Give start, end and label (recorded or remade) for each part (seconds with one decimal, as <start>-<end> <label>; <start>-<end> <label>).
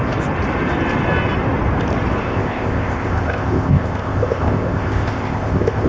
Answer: 0.0-2.2 recorded; 2.2-5.9 remade